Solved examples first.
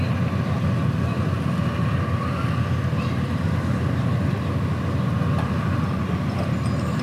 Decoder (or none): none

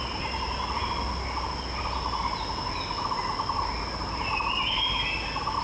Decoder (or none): none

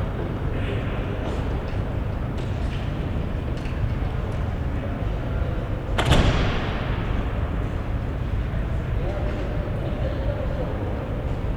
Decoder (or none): none